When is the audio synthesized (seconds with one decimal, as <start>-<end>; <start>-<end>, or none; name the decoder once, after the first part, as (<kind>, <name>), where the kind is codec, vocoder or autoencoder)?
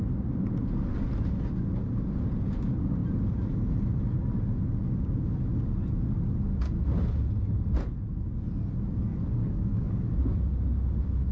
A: 9.1-10.1 (codec, DAC)